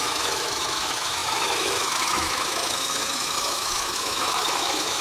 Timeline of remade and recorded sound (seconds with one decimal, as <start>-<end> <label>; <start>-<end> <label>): 0.0-5.0 remade

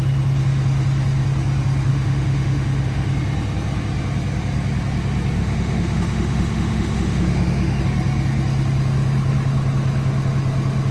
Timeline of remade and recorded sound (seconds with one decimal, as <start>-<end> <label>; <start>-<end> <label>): 0.0-1.9 recorded; 1.9-3.1 remade; 3.1-5.4 recorded; 5.4-7.8 remade; 7.8-10.9 recorded

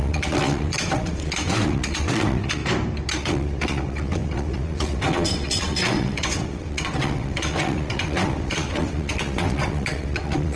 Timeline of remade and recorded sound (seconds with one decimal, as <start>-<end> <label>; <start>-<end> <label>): 0.0-2.6 remade; 2.6-3.1 recorded; 3.1-10.6 remade

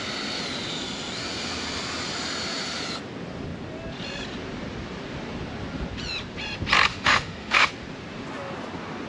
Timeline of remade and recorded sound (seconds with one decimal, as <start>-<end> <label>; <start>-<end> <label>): 0.0-6.9 recorded; 6.9-7.7 remade; 7.7-9.1 recorded

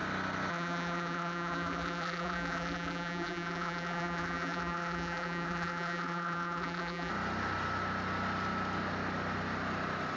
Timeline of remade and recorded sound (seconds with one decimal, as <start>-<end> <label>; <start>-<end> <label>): 0.0-0.5 recorded; 0.5-7.1 remade; 7.1-10.2 recorded

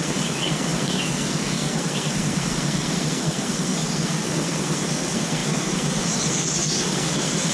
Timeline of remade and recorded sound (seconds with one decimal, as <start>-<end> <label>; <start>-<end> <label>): 0.0-7.5 remade

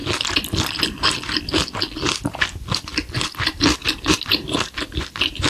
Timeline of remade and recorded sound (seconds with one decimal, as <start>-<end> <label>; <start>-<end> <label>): 0.0-5.5 recorded